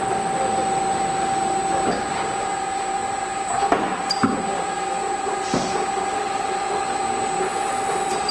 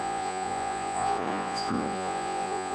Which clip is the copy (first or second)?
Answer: second